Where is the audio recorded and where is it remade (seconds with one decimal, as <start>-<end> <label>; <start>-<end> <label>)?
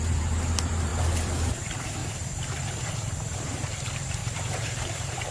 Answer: 0.0-0.9 remade; 0.9-1.5 recorded; 1.5-2.0 remade; 2.0-2.9 recorded; 2.9-5.3 remade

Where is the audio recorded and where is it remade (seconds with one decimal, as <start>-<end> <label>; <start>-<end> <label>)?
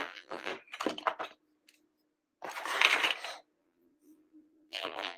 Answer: 0.0-0.5 remade; 0.5-3.6 recorded; 3.6-5.2 remade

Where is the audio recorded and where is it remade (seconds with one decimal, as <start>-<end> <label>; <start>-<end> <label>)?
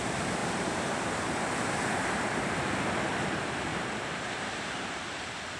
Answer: 0.0-0.4 recorded; 0.4-2.4 remade; 2.4-3.7 recorded; 3.7-5.1 remade; 5.1-5.6 recorded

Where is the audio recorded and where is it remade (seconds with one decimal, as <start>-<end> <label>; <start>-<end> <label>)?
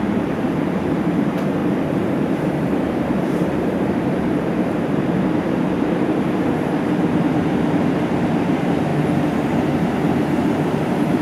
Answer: 0.0-8.9 remade; 8.9-9.7 recorded; 9.7-11.2 remade